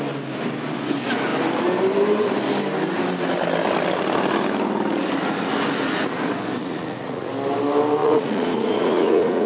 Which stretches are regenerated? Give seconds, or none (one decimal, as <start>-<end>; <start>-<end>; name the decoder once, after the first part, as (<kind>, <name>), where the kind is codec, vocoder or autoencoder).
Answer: 6.6-7.3 (vocoder, Vocos); 8.0-9.5